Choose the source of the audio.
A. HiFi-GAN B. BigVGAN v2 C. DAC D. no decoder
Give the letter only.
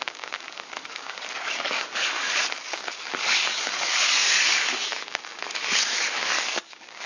C